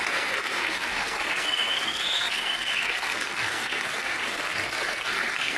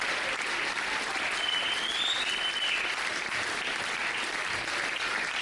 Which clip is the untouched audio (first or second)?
second